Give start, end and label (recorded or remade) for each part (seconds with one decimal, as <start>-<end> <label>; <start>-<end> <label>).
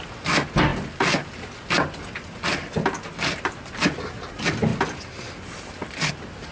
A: 0.0-6.5 recorded